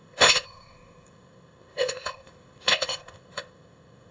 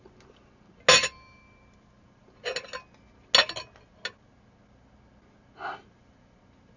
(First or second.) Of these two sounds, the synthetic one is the first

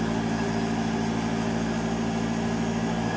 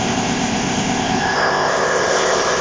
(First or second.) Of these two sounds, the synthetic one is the second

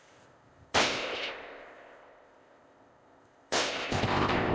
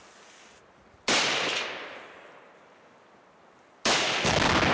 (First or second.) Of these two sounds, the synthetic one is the first